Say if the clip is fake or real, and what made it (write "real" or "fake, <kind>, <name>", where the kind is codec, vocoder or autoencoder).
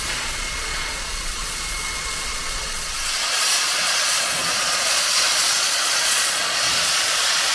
fake, vocoder, Vocos